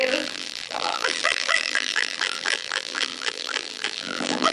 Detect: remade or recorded remade